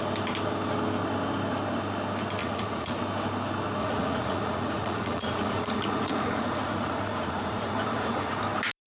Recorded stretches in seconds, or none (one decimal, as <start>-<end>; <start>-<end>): 0.0-2.4; 3.0-3.8; 8.4-8.9